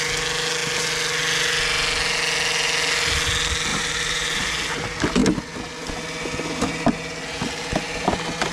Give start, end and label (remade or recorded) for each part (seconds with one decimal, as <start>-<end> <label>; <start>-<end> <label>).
0.0-3.7 recorded; 3.7-4.5 remade; 4.5-8.5 recorded

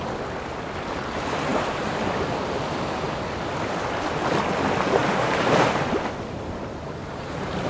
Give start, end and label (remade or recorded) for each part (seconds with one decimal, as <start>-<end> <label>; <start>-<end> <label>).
0.0-1.5 recorded; 1.5-2.0 remade; 2.0-5.0 recorded; 5.0-5.8 remade; 5.8-7.0 recorded; 7.0-7.7 remade

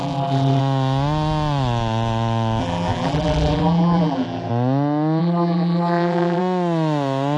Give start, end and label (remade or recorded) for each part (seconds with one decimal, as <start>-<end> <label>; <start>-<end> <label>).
0.0-0.6 remade; 0.6-2.6 recorded; 2.6-4.5 remade; 4.5-5.2 recorded; 5.2-6.4 remade; 6.4-7.4 recorded

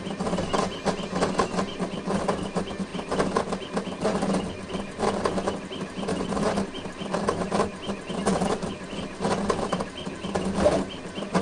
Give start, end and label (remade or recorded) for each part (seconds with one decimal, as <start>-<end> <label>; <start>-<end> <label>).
0.0-11.4 recorded

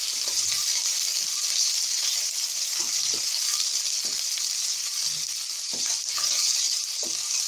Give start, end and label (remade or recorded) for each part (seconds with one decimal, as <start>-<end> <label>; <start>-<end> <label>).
0.0-0.9 remade; 0.9-1.6 recorded; 1.6-3.5 remade; 3.5-5.5 recorded; 5.5-7.5 remade

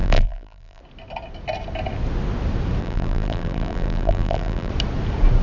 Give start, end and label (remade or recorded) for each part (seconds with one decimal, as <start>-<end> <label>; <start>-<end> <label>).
0.0-0.8 remade; 0.8-2.8 recorded; 2.8-4.7 remade; 4.7-5.4 recorded

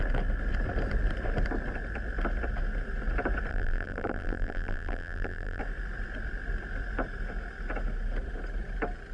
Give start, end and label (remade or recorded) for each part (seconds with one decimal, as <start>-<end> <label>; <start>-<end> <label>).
0.0-3.5 recorded; 3.5-5.6 remade; 5.6-9.1 recorded